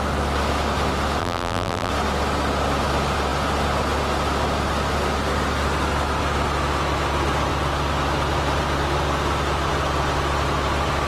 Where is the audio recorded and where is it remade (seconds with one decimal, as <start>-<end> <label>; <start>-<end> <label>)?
0.0-1.2 recorded; 1.2-1.9 remade; 1.9-11.1 recorded